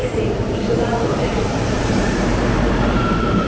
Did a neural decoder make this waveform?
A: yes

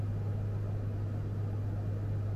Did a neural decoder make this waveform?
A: no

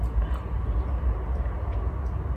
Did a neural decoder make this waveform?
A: no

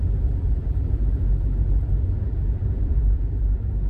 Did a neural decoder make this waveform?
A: yes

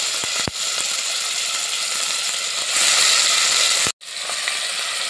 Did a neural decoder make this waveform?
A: no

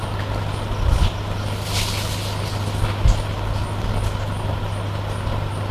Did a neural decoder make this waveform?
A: no